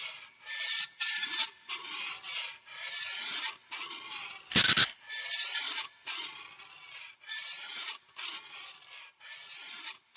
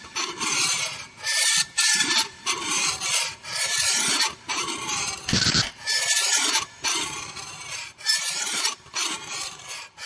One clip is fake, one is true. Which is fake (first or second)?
second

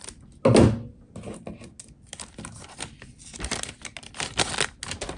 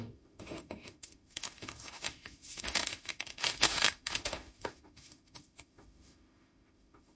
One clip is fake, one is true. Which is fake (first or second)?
second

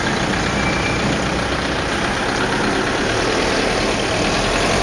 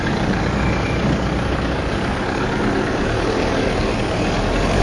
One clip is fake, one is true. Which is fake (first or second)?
second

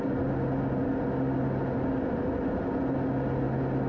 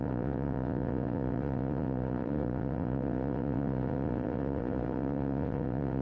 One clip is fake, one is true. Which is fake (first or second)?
second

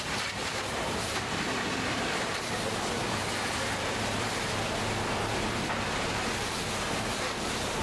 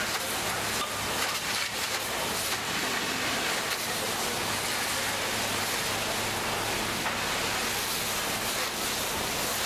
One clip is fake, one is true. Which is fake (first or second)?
first